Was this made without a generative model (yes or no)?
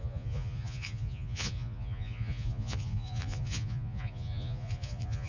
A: no